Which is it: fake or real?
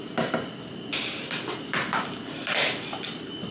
real